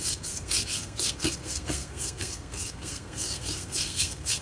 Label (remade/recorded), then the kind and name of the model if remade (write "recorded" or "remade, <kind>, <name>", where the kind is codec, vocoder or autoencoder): remade, codec, SNAC